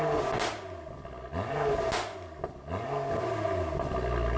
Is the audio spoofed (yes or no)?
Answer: no